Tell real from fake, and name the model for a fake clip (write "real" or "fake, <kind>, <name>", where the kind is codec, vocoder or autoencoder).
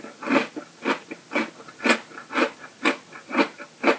real